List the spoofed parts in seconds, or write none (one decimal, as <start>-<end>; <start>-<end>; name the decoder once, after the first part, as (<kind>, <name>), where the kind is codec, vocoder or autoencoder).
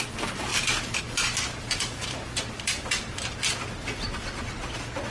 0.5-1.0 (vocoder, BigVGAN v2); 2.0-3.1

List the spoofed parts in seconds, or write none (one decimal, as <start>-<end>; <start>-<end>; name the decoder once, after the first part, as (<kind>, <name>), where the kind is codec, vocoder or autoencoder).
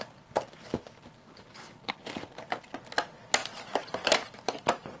1.2-1.9 (vocoder, BigVGAN v2); 3.4-5.0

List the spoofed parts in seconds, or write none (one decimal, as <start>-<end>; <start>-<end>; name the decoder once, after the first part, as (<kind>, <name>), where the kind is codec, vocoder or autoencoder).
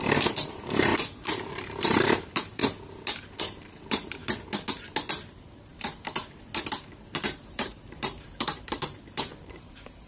0.0-2.6 (vocoder, BigVGAN v2); 3.4-4.2; 5.1-5.7; 6.8-10.1